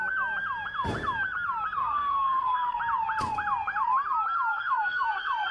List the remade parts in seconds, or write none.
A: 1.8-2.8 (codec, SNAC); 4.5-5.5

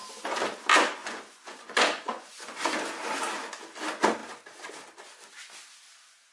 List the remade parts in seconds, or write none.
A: 1.0-2.7 (vocoder, Vocos)

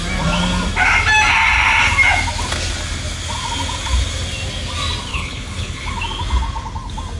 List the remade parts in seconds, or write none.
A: 5.1-5.9 (codec, HILCodec)

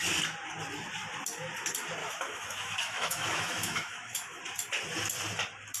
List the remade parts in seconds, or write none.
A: 2.0-4.4 (autoencoder, DAC-VAE)

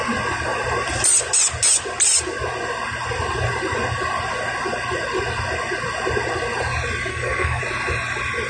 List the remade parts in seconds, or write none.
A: 7.1-7.6 (codec, SNAC)

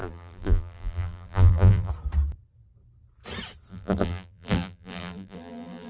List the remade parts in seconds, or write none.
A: 0.0-1.9 (vocoder, BigVGAN v2); 3.7-5.9

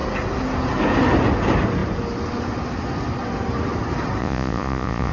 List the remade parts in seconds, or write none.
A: 4.2-5.1 (vocoder, Vocos)